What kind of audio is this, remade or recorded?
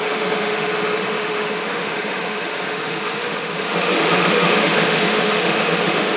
remade